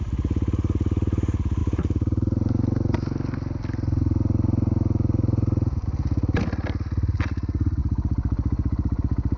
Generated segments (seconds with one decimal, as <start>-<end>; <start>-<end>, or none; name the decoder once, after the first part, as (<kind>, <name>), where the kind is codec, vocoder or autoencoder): 7.8-9.0 (vocoder, BigVGAN v2)